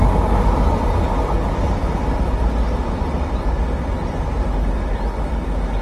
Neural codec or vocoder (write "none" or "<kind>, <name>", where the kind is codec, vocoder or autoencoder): none